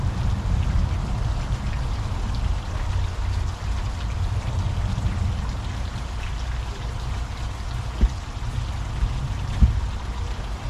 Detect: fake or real real